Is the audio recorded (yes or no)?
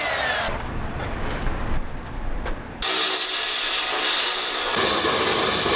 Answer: yes